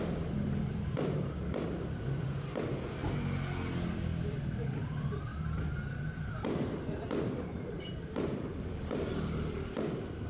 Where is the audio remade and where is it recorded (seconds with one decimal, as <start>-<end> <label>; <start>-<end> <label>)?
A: 0.0-3.0 remade; 3.0-3.9 recorded; 3.9-5.3 remade; 5.3-6.3 recorded; 6.3-10.3 remade